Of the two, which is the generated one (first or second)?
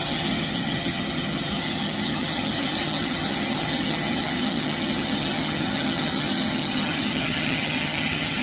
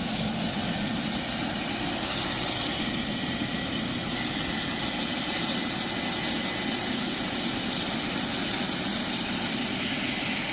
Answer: first